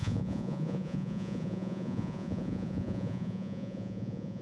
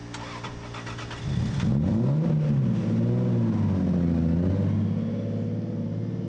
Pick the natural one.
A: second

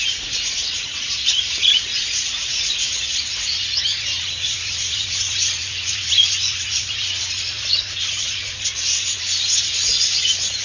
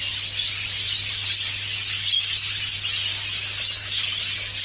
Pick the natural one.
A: second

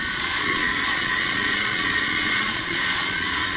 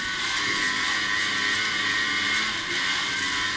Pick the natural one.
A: second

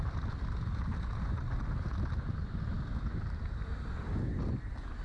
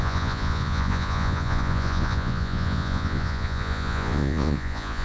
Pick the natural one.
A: first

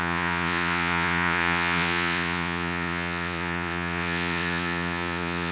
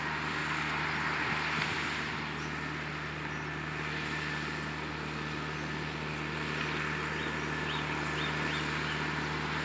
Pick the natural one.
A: second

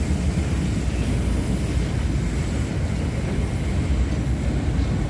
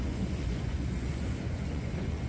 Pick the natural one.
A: first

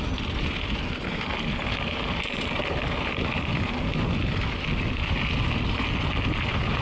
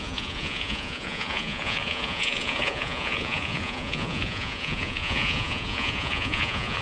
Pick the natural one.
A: first